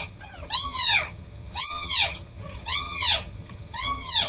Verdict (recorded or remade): remade